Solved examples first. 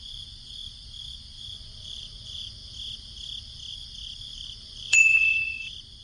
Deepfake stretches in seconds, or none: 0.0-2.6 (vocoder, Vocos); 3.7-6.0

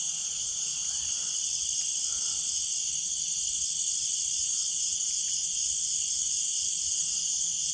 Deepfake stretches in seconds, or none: 0.0-0.7 (vocoder, Vocos); 4.3-5.6; 6.3-7.7